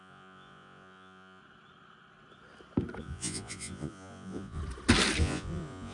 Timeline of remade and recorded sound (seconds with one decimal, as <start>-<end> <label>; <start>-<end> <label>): 0.0-1.4 remade; 1.4-3.0 recorded; 3.0-4.6 remade; 4.6-5.2 recorded; 5.2-5.9 remade